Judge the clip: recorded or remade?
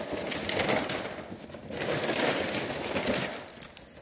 recorded